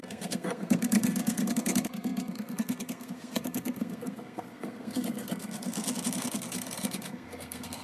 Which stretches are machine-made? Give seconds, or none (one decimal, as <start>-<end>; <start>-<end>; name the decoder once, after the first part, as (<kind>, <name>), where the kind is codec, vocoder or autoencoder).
0.0-7.8 (codec, SNAC)